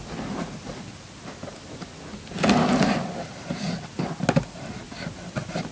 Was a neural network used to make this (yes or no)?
no